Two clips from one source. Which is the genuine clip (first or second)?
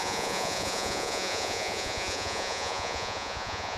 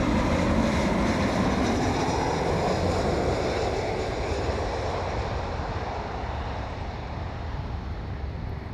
second